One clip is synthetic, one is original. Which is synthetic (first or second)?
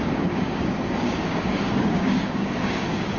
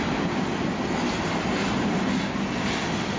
first